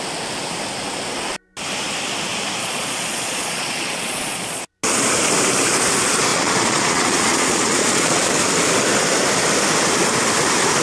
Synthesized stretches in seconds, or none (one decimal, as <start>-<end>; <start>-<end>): 2.6-4.6; 6.3-8.3